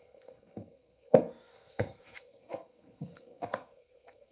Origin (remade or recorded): remade